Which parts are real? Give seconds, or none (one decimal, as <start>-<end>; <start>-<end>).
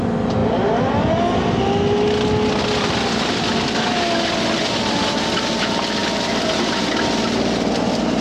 0.0-8.2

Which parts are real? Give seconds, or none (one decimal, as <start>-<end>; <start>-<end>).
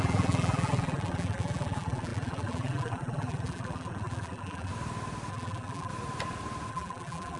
4.7-5.3; 5.9-6.7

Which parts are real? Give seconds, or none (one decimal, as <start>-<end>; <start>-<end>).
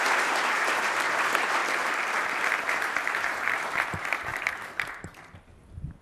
1.6-2.6